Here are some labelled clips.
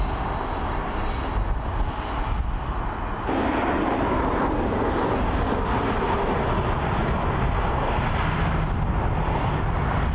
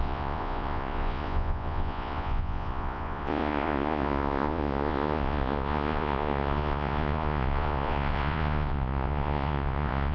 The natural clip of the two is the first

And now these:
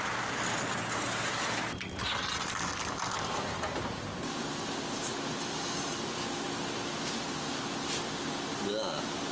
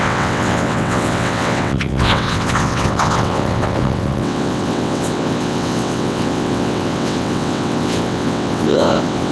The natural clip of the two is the first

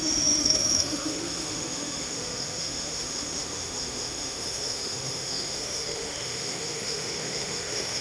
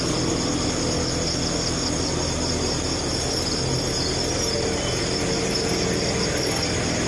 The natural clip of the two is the second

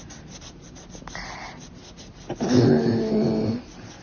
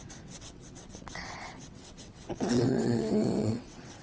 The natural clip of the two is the first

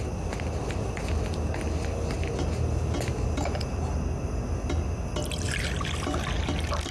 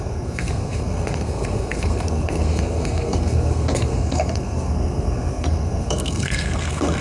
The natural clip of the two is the first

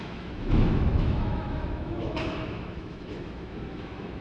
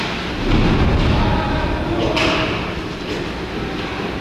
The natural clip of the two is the second